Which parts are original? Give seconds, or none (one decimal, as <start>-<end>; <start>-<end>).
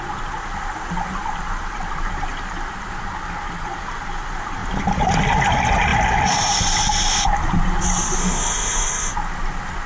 0.0-8.2; 9.1-9.9